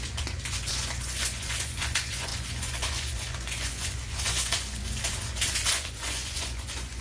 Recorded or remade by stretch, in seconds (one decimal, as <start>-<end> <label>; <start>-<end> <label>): 0.0-7.0 remade